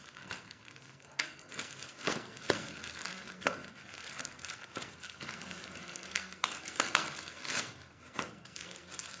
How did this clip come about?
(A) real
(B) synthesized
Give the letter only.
B